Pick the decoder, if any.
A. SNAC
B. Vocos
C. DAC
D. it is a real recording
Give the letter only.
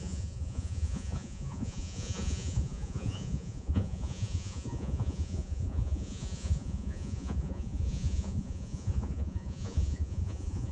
B